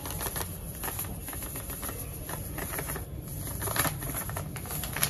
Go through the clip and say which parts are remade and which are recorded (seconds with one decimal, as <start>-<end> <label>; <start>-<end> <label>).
0.0-2.2 recorded; 2.2-3.9 remade; 3.9-5.1 recorded